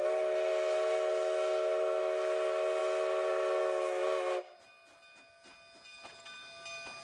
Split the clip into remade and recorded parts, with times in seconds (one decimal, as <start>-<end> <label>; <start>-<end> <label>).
0.0-7.0 recorded